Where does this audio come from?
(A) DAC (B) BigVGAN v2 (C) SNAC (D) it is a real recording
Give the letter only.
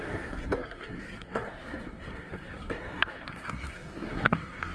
C